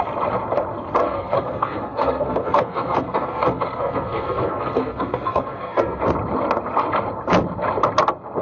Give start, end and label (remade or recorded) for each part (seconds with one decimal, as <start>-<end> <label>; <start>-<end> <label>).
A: 0.0-1.0 recorded; 1.0-6.0 remade; 6.0-8.4 recorded